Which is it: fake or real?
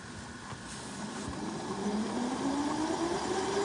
real